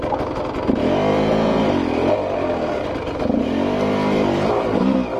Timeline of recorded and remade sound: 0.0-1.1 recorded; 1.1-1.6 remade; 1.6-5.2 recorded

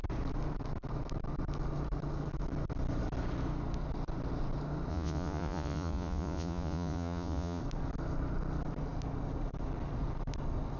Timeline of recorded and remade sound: 0.0-4.9 recorded; 4.9-7.6 remade; 7.6-10.8 recorded

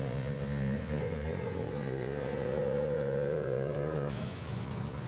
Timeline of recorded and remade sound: 0.0-5.1 remade

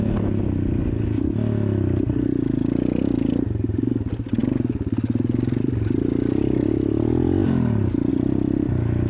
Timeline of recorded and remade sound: 0.0-9.1 recorded

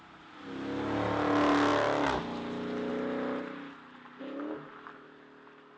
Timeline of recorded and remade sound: 0.0-5.8 recorded

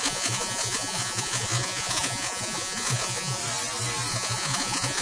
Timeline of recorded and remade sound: 0.0-3.4 remade; 3.4-4.1 recorded; 4.1-5.0 remade